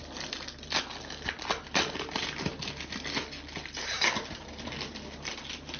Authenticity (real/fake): real